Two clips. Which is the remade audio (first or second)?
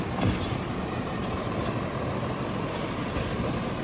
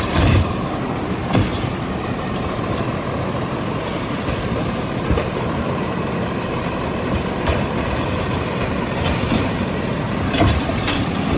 second